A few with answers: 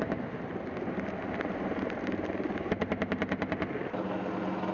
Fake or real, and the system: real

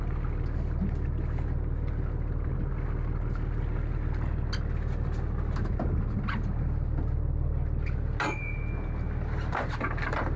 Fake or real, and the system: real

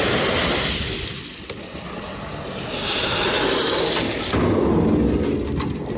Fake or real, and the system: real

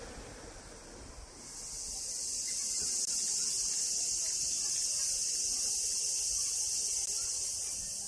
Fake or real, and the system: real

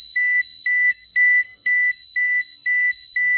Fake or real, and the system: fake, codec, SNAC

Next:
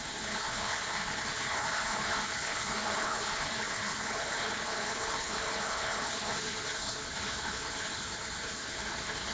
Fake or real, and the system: fake, codec, HILCodec